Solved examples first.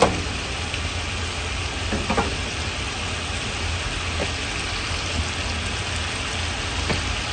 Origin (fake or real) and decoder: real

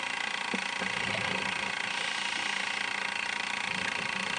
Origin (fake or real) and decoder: real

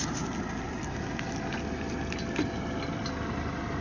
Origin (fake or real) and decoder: real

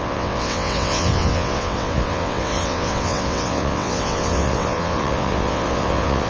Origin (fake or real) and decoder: fake, vocoder, WaveNeXt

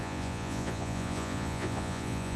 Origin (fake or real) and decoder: fake, vocoder, Vocos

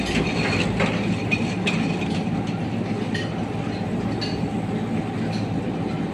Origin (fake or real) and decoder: real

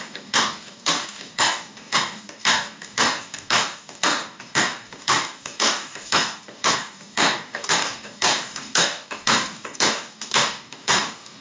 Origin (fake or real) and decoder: fake, codec, DAC